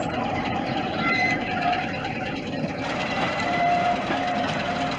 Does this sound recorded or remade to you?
remade